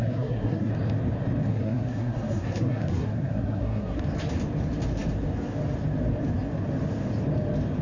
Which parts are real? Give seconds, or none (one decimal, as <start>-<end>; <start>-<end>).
0.7-1.5; 4.0-7.8